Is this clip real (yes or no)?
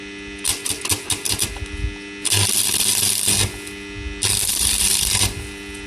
yes